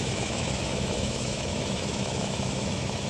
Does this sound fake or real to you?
fake